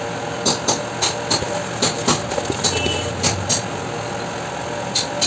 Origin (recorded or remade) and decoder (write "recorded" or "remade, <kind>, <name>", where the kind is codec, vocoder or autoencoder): recorded